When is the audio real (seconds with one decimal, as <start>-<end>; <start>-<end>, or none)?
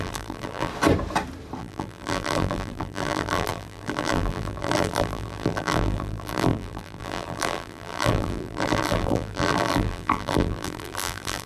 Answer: 0.7-1.6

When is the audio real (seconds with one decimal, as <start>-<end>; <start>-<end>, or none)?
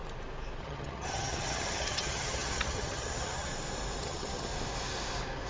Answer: 0.0-0.6; 3.5-4.0; 4.5-5.5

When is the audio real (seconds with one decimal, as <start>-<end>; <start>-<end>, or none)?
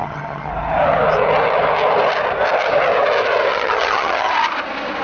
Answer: 0.5-3.5; 4.3-5.0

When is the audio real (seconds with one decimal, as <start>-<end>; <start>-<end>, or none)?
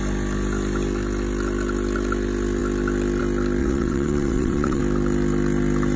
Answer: 0.0-3.6; 4.8-6.0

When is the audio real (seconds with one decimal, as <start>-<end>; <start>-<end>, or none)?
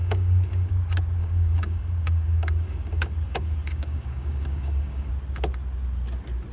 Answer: 0.7-1.2; 5.1-6.5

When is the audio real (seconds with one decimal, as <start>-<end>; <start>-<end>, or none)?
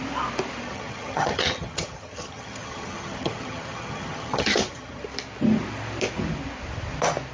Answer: 0.0-0.6; 5.0-7.3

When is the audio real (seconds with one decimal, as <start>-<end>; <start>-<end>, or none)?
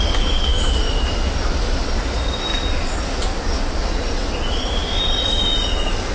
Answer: 0.0-2.5; 3.0-4.8; 5.4-6.1